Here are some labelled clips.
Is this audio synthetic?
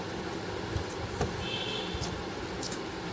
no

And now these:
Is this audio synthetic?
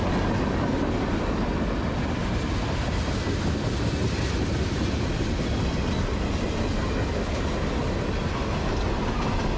no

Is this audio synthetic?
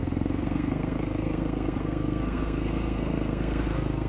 yes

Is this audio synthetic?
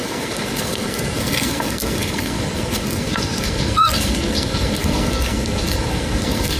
yes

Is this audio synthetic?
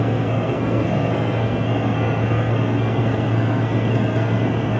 yes